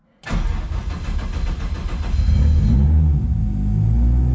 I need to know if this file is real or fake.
real